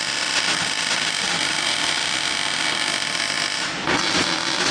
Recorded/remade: recorded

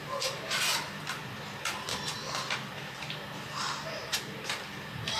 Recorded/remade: recorded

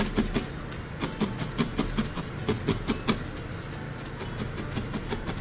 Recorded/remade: recorded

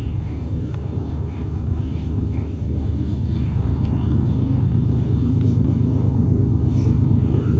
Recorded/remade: remade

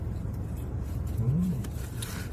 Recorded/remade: remade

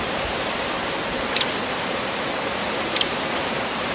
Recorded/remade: remade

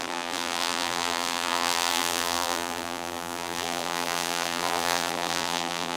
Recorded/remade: remade